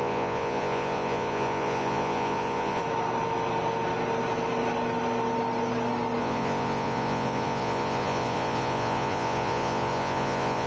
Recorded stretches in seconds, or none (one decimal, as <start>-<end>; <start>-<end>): 2.8-6.2